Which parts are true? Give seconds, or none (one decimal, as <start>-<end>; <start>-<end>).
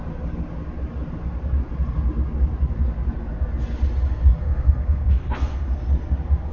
0.0-4.3; 5.8-6.5